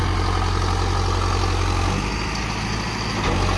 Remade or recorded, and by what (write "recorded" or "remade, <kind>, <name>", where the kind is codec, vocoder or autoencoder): recorded